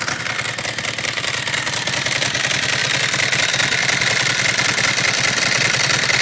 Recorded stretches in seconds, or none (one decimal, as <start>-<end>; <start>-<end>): 0.0-6.2

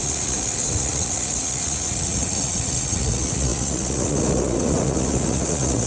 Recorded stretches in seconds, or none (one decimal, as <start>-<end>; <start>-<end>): none

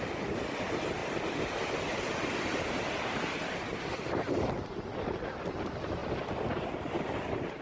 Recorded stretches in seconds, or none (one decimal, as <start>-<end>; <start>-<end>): 0.0-7.6

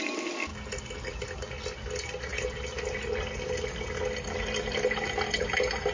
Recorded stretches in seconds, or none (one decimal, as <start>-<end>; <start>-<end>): 0.0-5.9

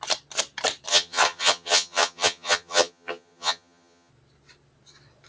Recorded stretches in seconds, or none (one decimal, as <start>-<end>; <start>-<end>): 0.0-0.9; 4.1-5.3

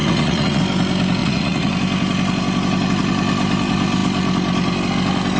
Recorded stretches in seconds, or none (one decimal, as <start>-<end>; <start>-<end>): 0.6-1.2; 1.7-5.4

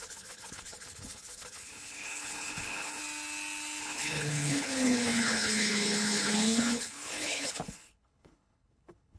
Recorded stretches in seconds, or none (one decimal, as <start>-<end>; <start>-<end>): 3.0-3.8